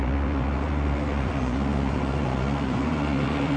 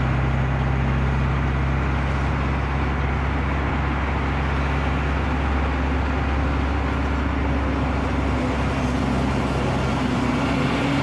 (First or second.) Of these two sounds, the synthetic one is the first